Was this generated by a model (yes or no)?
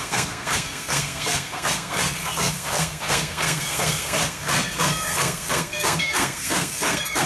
yes